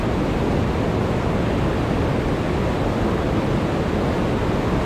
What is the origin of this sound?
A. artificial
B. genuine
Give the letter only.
B